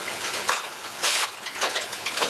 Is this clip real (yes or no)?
no